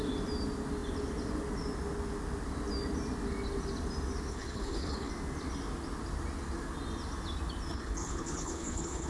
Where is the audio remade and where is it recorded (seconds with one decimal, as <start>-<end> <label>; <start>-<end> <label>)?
0.0-4.3 recorded; 4.3-5.1 remade; 5.1-7.7 recorded; 7.7-9.1 remade